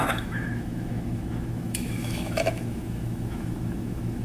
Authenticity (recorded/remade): remade